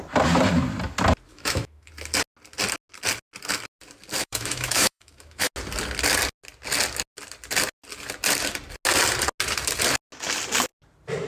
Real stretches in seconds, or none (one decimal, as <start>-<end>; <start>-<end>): 0.0-1.3; 1.9-4.2; 5.5-11.3